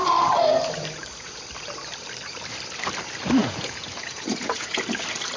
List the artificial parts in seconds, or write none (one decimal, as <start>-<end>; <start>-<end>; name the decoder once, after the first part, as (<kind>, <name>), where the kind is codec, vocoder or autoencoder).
3.4-4.8 (vocoder, Vocos)